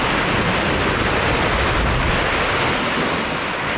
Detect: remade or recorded recorded